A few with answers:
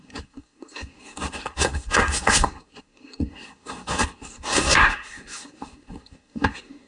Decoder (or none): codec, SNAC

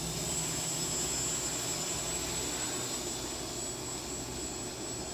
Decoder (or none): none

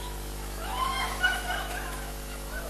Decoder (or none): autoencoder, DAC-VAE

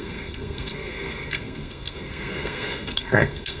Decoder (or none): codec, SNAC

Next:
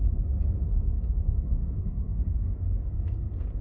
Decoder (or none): codec, SNAC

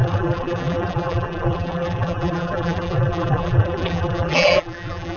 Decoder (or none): vocoder, BigVGAN v2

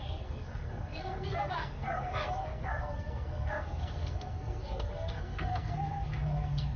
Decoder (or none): codec, SNAC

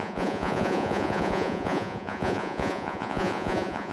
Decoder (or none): vocoder, Vocos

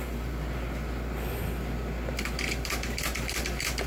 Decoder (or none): vocoder, BigVGAN v2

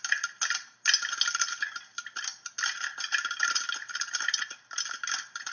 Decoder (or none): none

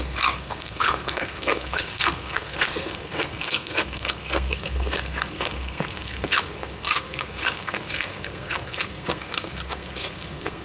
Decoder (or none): codec, SNAC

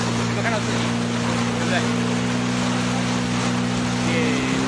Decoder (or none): none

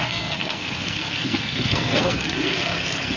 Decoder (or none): codec, SNAC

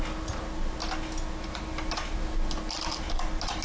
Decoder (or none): none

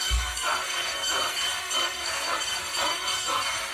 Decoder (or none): codec, SNAC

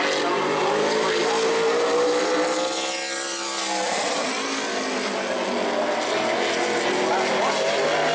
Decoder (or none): none